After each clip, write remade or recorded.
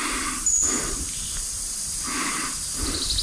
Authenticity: recorded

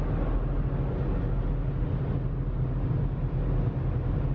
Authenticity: recorded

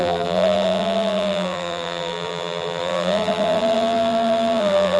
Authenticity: remade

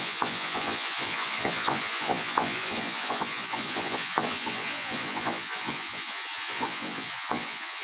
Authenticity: remade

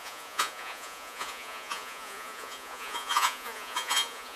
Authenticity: remade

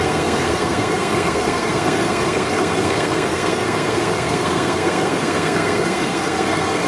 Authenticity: remade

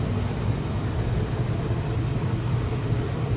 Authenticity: remade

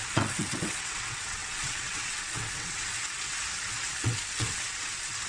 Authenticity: remade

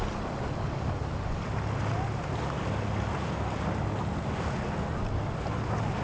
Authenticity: recorded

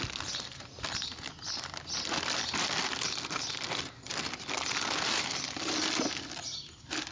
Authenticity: recorded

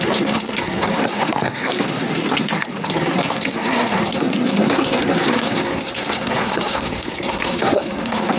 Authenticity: remade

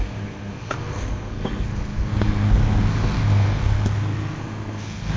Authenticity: remade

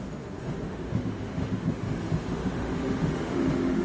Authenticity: remade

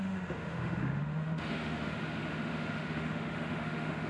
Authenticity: remade